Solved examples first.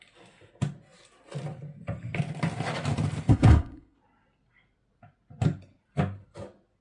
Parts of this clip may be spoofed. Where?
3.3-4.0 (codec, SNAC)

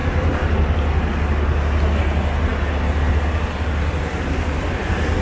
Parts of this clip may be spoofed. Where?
none

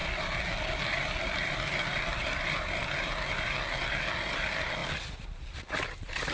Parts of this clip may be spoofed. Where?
none